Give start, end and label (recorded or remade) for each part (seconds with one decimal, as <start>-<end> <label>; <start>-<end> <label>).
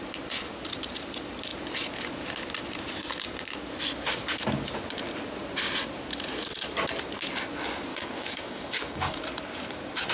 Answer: 0.0-7.9 recorded; 7.9-9.2 remade; 9.2-10.1 recorded